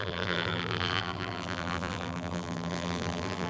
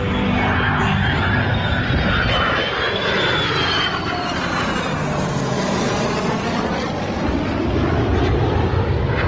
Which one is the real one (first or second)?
second